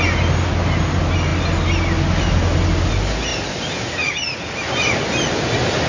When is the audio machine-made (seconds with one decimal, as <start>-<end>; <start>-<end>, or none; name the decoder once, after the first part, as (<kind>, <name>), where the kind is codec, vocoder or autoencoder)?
none